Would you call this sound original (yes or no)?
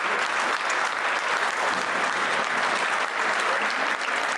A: yes